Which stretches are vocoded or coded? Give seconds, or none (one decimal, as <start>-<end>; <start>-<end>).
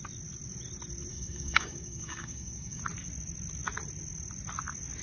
1.1-2.8